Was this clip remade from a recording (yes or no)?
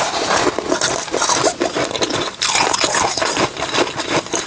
no